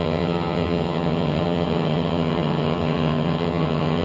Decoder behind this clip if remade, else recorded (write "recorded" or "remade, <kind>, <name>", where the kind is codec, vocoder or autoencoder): remade, vocoder, HiFi-GAN